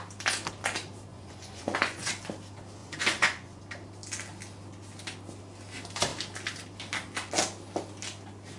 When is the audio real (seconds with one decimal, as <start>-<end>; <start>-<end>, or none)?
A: 0.0-1.1; 2.1-2.8; 3.6-8.6